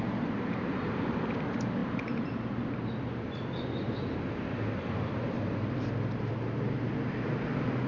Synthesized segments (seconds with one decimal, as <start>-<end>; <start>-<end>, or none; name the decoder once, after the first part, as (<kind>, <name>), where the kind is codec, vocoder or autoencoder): none